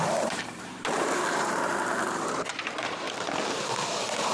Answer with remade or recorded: remade